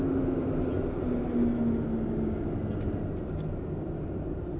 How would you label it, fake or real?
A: real